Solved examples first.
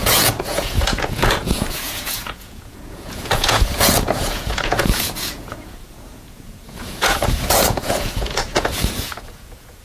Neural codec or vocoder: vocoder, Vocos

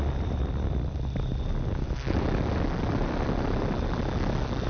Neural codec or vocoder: none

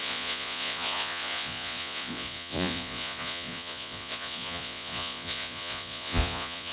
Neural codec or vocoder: vocoder, Vocos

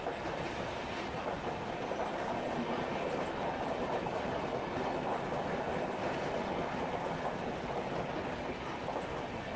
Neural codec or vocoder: none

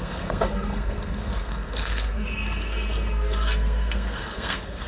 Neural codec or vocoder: codec, SNAC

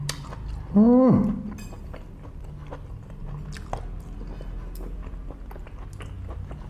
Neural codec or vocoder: none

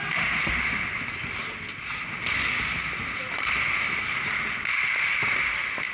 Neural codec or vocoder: none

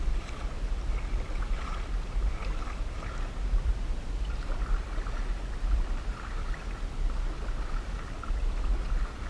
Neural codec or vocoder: none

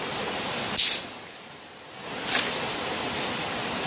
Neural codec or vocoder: none